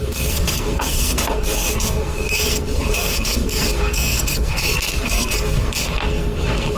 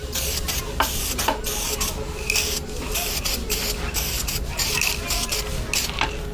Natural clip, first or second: second